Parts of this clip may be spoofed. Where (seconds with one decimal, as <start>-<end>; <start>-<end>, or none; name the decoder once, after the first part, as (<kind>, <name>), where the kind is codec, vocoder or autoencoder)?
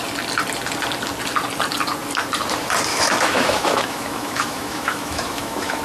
2.9-5.8 (autoencoder, DAC-VAE)